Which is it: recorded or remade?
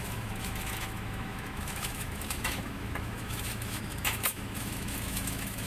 remade